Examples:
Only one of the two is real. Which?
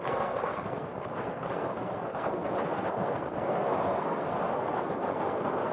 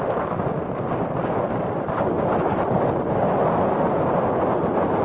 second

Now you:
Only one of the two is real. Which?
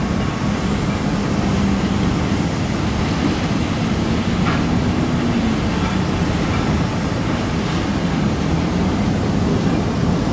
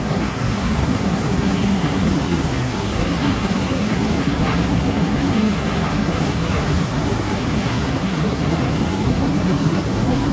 first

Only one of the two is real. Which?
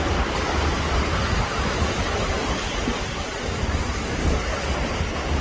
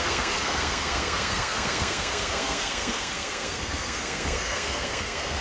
first